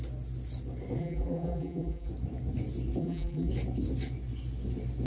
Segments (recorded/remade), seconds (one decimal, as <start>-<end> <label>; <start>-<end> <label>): 0.0-1.0 recorded; 1.0-2.1 remade; 2.1-3.0 recorded; 3.0-3.5 remade; 3.5-5.1 recorded